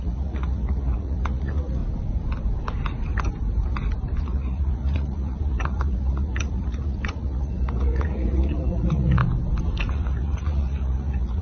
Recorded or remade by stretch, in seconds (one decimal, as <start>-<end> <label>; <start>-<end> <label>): 0.0-1.8 remade; 1.8-4.2 recorded; 4.2-9.2 remade; 9.2-9.9 recorded; 9.9-11.4 remade